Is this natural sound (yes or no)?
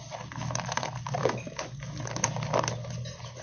yes